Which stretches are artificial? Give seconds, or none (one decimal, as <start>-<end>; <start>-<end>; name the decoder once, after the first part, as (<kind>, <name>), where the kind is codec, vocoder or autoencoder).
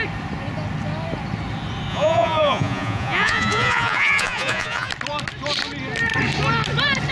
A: 1.9-4.9 (vocoder, Vocos)